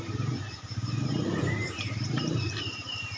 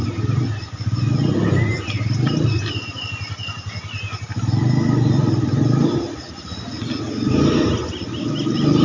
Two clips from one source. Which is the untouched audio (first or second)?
second